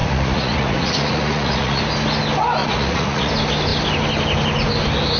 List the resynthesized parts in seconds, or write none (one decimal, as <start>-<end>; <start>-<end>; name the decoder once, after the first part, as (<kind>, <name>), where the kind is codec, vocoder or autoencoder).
0.0-1.8 (vocoder, Vocos); 2.6-3.3